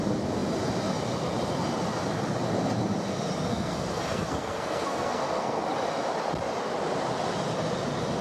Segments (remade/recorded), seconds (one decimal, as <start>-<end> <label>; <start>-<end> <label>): 0.0-3.5 recorded; 3.5-5.6 remade; 5.6-8.2 recorded